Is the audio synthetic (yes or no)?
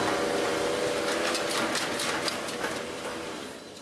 no